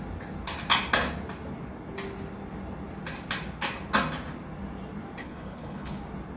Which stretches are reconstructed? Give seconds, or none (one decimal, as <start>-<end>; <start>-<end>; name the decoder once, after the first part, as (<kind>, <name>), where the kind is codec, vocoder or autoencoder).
5.2-6.0 (codec, HILCodec)